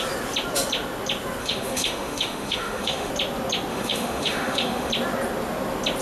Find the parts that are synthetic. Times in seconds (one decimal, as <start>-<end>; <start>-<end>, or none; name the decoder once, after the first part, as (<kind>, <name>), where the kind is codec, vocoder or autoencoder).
1.4-3.1 (autoencoder, DAC-VAE); 3.7-4.9